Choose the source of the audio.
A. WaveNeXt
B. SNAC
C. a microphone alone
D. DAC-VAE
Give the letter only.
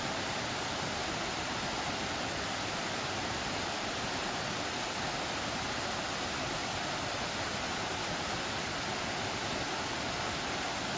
C